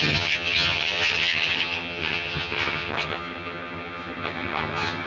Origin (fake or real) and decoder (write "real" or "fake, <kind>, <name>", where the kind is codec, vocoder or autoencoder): fake, vocoder, HiFi-GAN